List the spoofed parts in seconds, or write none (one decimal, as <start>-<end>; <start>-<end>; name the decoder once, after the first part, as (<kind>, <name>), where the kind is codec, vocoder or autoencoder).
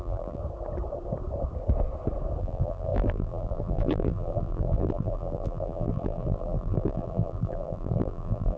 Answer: 0.0-0.4 (vocoder, BigVGAN v2); 2.4-8.6